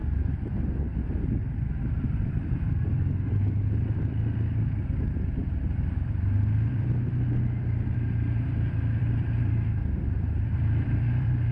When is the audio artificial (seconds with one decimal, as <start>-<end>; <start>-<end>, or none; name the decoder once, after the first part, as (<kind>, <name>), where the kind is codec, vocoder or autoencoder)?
0.8-11.5 (vocoder, BigVGAN v2)